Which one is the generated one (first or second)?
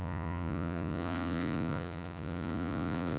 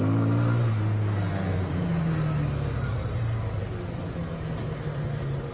first